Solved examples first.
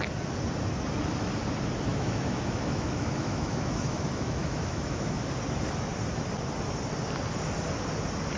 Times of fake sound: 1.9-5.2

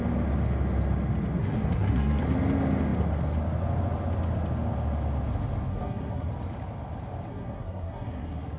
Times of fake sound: 1.4-2.2; 5.7-6.3; 7.3-8.6

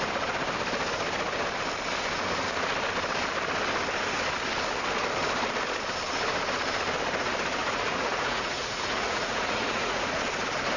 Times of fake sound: 7.6-10.2

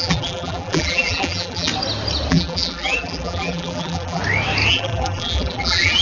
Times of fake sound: 0.0-1.7; 2.3-4.2; 4.7-6.0

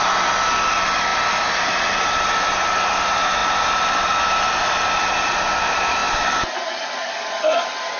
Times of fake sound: 1.1-1.9; 6.0-7.6